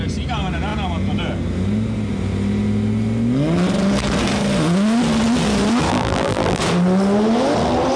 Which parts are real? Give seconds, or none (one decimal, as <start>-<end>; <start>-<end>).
0.0-5.9; 6.6-8.0